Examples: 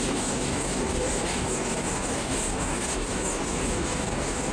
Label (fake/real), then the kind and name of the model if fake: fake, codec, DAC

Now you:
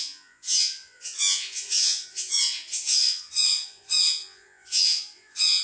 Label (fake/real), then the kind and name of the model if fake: fake, vocoder, Vocos